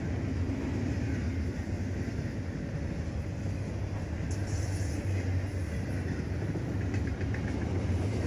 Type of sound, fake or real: real